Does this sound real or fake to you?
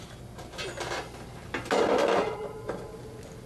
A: real